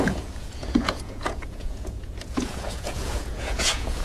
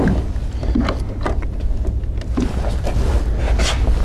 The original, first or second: second